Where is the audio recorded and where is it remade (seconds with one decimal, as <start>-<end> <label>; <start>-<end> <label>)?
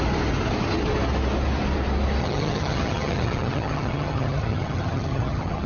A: 0.0-2.2 recorded; 2.2-5.7 remade